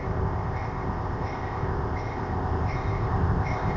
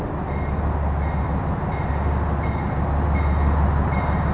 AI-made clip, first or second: first